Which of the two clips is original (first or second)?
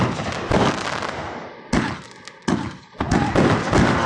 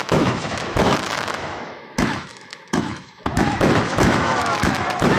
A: first